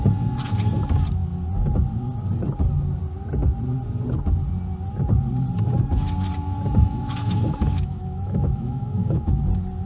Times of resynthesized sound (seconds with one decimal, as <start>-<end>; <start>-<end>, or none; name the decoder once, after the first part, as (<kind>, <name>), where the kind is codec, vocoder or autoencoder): 6.8-9.4 (autoencoder, DAC-VAE)